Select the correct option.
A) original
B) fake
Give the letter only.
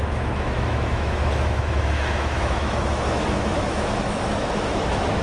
B